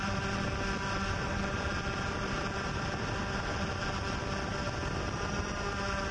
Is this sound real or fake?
real